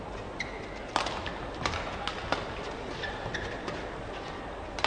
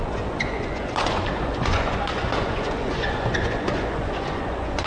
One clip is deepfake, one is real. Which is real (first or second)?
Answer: first